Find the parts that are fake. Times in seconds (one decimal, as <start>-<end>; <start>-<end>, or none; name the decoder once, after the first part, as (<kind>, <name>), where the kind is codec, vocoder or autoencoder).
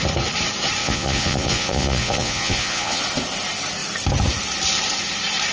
0.8-3.0 (vocoder, Vocos)